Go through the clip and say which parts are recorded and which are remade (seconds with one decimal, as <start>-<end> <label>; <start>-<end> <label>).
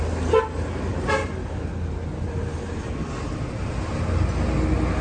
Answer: 0.0-5.0 recorded